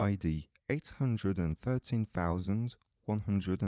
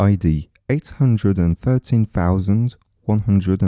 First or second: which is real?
second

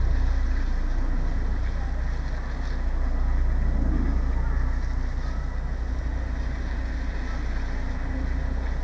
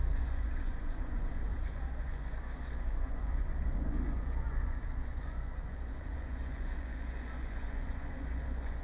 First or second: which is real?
first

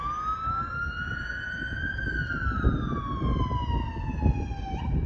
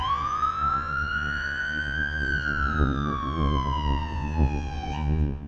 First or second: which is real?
first